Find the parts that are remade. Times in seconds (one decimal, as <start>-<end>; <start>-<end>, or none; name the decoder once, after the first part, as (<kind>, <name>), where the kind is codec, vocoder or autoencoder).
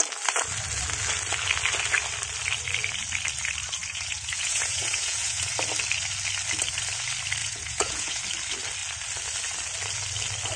3.9-5.5 (vocoder, Vocos); 7.4-8.2